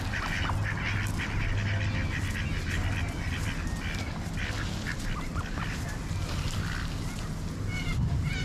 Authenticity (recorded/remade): recorded